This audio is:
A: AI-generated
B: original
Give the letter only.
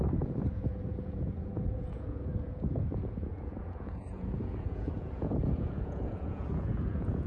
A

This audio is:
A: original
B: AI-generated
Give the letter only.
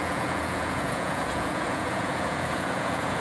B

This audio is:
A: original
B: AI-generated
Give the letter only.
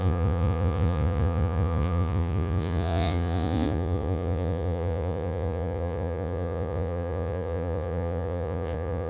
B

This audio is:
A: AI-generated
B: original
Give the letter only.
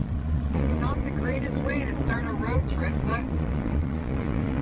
A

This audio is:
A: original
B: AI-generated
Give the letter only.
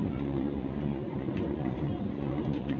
B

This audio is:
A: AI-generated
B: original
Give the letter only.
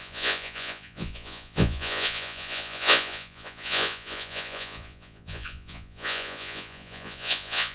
A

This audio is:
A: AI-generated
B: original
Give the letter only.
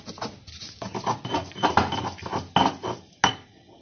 B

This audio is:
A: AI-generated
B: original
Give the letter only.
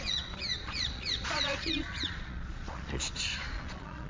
A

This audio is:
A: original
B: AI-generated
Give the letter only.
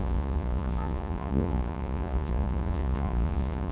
B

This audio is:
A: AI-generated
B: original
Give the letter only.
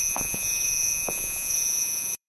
A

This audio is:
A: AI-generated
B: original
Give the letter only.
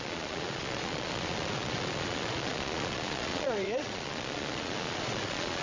A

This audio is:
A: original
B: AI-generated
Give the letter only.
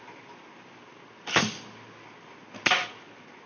A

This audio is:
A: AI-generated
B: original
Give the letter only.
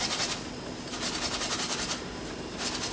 B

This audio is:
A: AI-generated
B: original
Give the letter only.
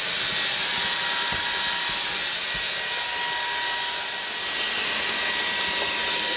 B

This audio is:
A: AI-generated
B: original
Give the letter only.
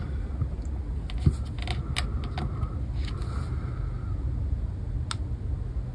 B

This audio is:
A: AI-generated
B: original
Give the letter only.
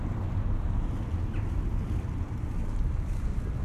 B